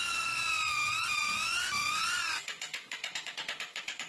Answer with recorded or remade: remade